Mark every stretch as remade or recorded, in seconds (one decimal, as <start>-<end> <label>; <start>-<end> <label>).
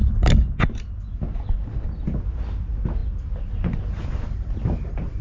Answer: 0.0-5.2 recorded